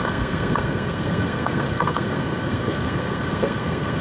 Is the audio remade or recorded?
remade